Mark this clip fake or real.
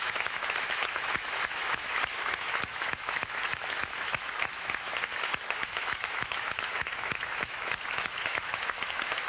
fake